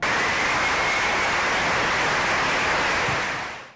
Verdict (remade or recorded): recorded